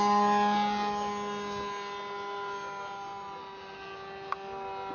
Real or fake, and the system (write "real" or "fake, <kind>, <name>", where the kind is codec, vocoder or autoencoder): real